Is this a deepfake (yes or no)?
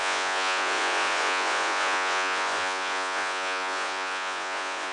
yes